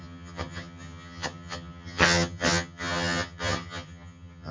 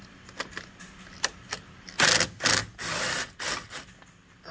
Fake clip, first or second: first